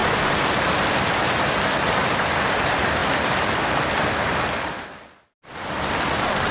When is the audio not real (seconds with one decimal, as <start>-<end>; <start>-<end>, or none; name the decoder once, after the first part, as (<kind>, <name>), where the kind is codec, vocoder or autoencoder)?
none